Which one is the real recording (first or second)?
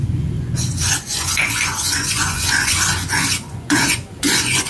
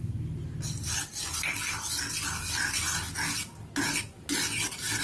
second